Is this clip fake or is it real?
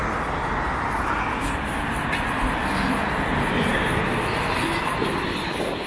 real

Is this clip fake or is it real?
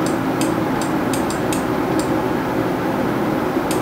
real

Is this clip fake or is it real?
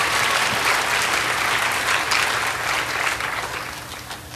real